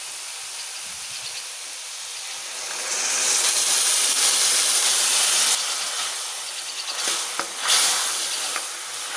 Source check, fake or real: real